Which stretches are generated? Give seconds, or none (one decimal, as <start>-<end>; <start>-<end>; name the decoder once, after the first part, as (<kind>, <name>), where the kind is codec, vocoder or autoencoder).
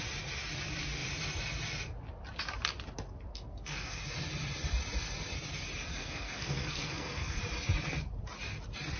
3.3-4.0 (codec, SNAC); 5.9-7.4